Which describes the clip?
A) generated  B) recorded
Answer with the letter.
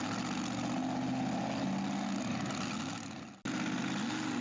B